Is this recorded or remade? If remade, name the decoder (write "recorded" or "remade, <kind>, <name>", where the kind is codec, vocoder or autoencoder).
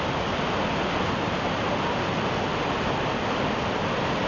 recorded